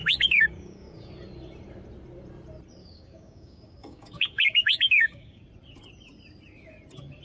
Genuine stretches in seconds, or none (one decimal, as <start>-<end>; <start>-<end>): 1.1-2.8; 5.4-7.2